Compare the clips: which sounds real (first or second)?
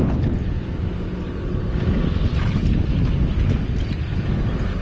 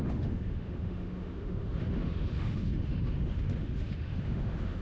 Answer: first